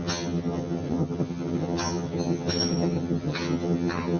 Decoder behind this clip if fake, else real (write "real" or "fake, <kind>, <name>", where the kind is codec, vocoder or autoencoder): fake, vocoder, HiFi-GAN